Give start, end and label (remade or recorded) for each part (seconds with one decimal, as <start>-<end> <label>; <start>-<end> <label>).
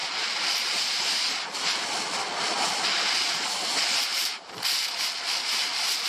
0.0-4.1 recorded; 4.1-4.6 remade; 4.6-6.1 recorded